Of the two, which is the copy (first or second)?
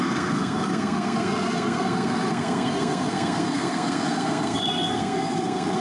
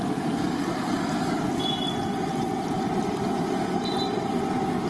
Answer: first